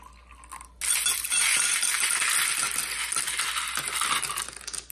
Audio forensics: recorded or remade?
recorded